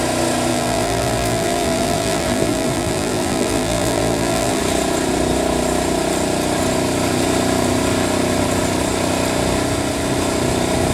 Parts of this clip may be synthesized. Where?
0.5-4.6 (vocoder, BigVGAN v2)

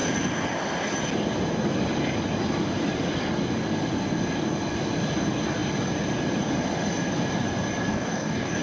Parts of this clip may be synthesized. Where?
7.9-8.6 (codec, DAC)

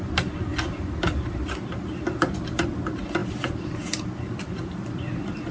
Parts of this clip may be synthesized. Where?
0.0-5.5 (vocoder, BigVGAN v2)

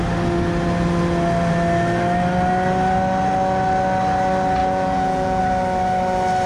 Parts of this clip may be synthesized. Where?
4.6-5.4 (vocoder, Vocos)

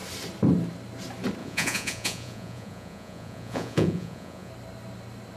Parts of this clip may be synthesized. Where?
1.4-4.5 (vocoder, Vocos)

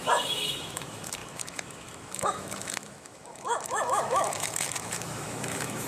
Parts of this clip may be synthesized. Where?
0.0-5.9 (autoencoder, DAC-VAE)